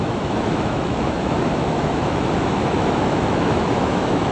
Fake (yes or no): yes